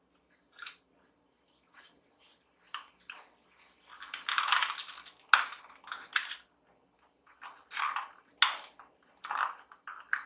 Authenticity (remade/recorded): recorded